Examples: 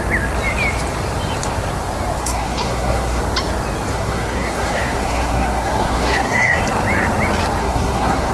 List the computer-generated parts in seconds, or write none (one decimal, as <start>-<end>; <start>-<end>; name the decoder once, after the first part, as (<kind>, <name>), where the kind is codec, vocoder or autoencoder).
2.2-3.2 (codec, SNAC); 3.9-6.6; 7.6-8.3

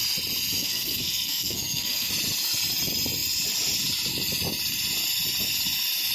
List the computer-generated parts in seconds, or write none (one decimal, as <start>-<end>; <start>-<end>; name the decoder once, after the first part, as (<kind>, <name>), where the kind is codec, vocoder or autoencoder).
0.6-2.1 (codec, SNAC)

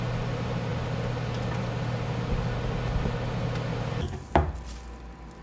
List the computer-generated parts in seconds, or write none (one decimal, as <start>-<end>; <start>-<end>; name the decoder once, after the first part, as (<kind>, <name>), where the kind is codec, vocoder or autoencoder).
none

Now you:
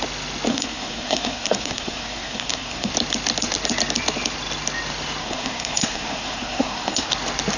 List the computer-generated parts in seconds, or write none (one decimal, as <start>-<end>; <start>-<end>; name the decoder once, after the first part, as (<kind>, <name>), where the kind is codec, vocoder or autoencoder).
0.5-2.9 (codec, SNAC); 5.2-7.1

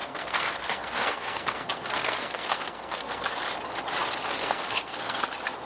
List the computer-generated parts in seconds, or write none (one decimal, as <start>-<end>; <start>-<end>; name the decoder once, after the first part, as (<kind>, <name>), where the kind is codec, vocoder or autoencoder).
0.0-3.4 (codec, SNAC); 4.4-5.2

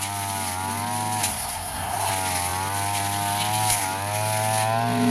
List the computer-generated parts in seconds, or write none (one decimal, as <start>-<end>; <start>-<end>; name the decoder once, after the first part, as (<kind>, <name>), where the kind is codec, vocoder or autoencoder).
1.3-2.1 (codec, SNAC)

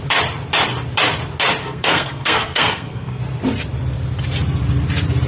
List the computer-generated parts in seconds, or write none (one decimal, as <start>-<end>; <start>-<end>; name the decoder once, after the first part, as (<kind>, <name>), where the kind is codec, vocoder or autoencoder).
1.6-3.2 (codec, SNAC)